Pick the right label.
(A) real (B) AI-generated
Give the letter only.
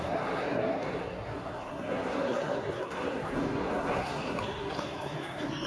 B